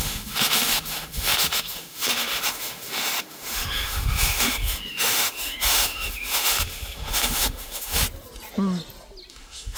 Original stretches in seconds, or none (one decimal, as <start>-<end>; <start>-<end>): 8.0-9.3